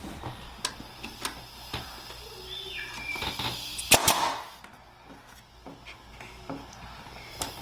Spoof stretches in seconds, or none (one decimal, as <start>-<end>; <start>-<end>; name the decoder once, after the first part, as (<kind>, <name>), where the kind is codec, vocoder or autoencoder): 4.0-4.6 (autoencoder, DAC-VAE)